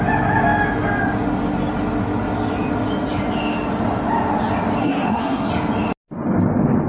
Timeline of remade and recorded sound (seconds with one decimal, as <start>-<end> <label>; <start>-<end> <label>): 0.0-4.8 recorded; 4.8-5.5 remade; 5.5-6.9 recorded